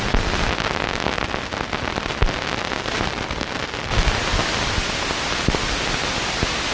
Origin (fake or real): real